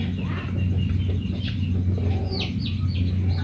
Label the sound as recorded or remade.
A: recorded